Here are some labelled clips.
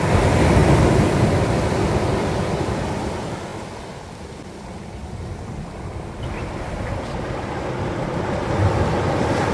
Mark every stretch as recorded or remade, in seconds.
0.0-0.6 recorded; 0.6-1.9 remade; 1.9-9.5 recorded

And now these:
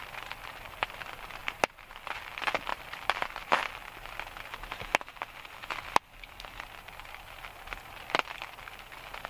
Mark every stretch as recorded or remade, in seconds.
0.0-1.4 recorded; 1.4-2.0 remade; 2.0-2.7 recorded; 2.7-3.7 remade; 3.7-9.3 recorded

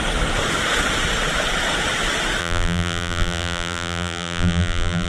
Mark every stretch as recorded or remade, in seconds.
0.0-2.4 recorded; 2.4-5.1 remade